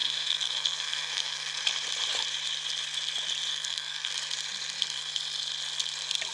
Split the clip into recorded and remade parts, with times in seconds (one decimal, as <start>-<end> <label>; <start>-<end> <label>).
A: 0.0-1.6 remade; 1.6-3.5 recorded; 3.5-4.1 remade; 4.1-6.3 recorded